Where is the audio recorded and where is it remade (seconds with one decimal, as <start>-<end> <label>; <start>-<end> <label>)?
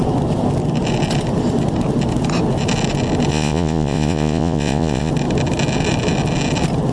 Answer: 0.0-3.3 recorded; 3.3-5.1 remade; 5.1-6.9 recorded